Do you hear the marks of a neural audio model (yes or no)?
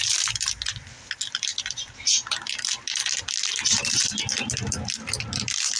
no